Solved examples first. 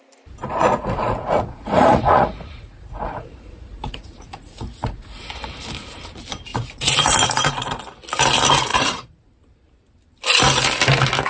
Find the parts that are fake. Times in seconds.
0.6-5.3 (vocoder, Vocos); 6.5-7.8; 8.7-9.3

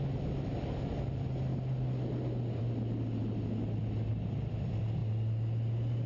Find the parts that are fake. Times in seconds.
none

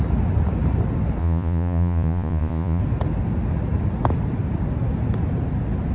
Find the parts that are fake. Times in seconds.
1.2-2.8 (vocoder, Vocos)

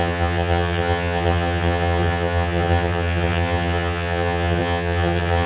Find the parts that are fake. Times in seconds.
0.0-5.5 (vocoder, HiFi-GAN)

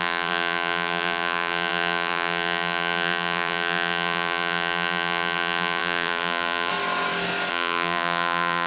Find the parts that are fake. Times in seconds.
0.0-6.7 (vocoder, BigVGAN v2); 7.5-8.7